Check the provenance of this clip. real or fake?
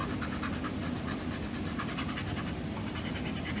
real